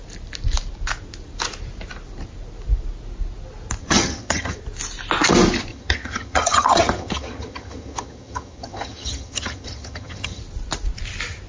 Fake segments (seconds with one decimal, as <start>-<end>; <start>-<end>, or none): 3.8-4.6; 5.7-10.4

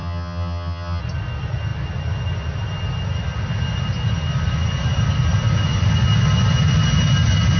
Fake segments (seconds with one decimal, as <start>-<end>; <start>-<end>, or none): 0.0-1.0

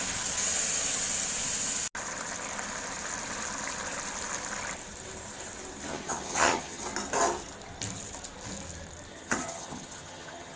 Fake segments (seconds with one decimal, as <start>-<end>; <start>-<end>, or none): 5.9-6.8; 9.1-10.6

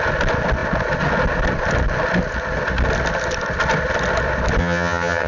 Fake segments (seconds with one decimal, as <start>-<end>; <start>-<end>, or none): 4.6-5.3

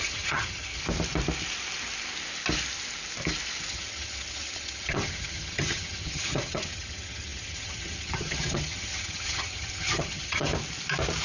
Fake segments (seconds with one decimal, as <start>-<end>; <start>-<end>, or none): 0.0-0.8; 3.7-10.5